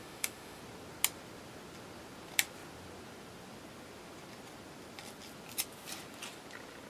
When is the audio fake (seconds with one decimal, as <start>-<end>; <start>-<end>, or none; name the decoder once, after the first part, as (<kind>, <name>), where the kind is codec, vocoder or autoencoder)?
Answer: 0.0-0.6 (autoencoder, DAC-VAE)